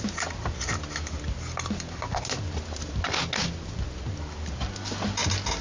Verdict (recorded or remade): recorded